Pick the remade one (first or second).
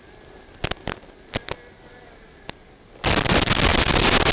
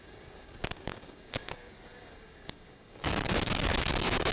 second